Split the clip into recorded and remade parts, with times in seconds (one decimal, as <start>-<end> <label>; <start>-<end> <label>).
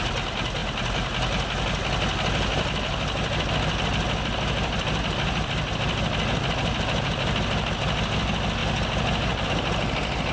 0.0-10.3 recorded